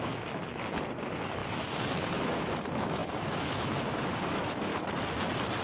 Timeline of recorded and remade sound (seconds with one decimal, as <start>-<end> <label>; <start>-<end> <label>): 0.0-4.7 remade; 4.7-5.6 recorded